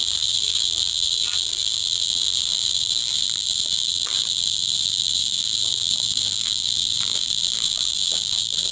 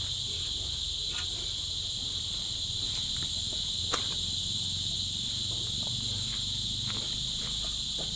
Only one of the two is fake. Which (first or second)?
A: first